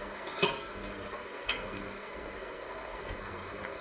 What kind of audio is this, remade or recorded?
remade